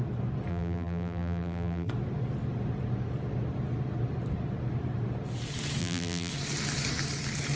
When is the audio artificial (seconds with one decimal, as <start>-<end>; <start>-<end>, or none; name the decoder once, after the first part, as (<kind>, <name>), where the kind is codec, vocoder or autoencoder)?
0.5-1.9 (vocoder, BigVGAN v2); 5.8-6.3